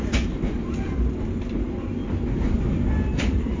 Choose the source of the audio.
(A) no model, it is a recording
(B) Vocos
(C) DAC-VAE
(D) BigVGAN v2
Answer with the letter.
A